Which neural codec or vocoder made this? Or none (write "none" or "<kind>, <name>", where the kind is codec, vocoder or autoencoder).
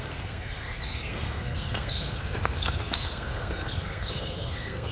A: codec, SNAC